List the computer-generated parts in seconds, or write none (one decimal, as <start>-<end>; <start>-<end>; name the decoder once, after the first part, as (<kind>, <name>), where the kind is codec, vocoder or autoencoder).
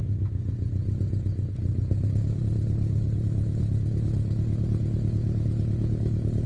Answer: none